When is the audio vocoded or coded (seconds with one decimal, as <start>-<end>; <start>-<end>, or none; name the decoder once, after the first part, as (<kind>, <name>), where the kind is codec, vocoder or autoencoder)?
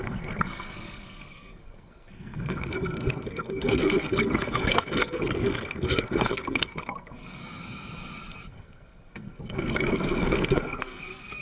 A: 0.0-7.4 (codec, SNAC); 8.5-11.4